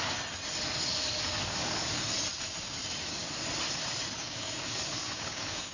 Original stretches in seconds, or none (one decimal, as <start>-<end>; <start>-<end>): 0.0-0.9; 2.0-4.2

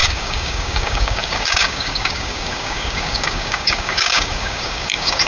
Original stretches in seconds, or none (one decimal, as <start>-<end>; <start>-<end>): none